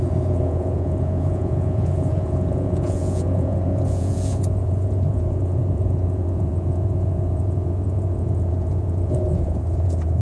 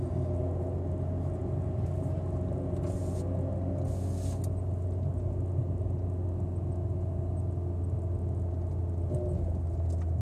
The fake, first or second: first